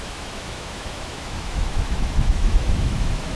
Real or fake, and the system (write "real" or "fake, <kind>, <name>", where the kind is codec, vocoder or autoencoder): fake, autoencoder, DAC-VAE